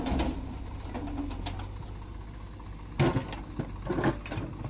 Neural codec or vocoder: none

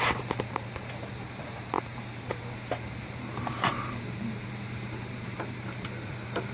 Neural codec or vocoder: vocoder, BigVGAN v2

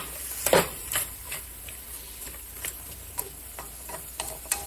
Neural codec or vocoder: vocoder, BigVGAN v2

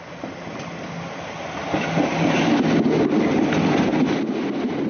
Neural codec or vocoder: none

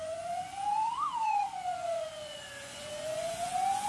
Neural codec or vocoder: vocoder, Vocos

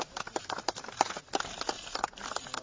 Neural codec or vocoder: none